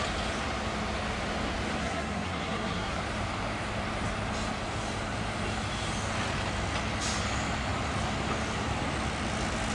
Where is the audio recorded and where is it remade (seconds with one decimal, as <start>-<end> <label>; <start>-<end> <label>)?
0.0-1.8 recorded; 1.8-3.0 remade; 3.0-9.7 recorded